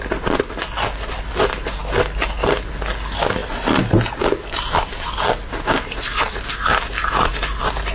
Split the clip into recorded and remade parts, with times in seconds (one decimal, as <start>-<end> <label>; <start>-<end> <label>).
0.0-7.9 recorded